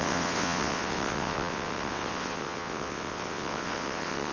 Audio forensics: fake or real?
fake